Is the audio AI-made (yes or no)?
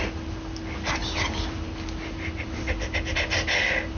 no